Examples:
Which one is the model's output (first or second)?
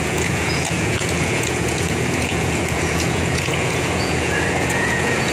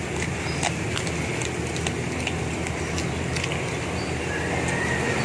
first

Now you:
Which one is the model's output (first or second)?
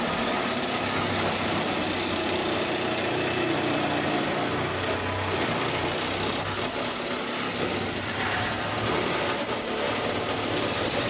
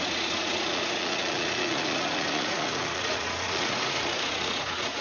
second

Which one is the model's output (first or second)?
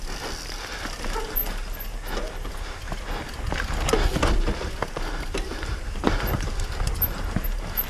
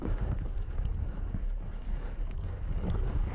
second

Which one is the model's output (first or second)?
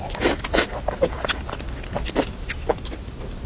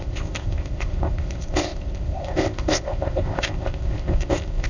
second